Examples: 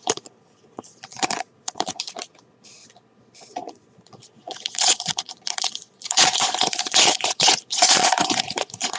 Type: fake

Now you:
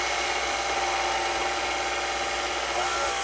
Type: real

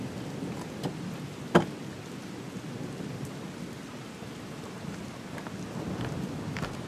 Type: real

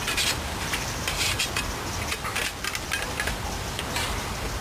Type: real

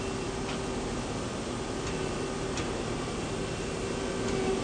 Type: real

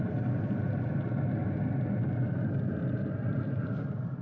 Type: real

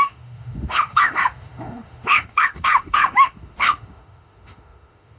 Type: fake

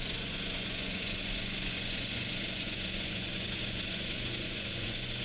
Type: fake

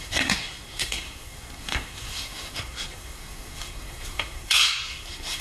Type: fake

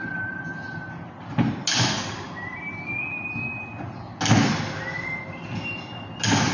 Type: real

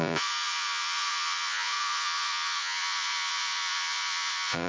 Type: fake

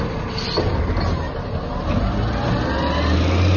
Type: real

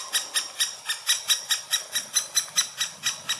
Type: real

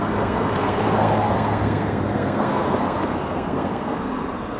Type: fake